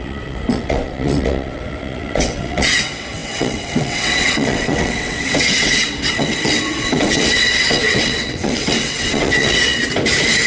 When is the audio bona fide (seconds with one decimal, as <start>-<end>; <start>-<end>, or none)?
9.8-10.5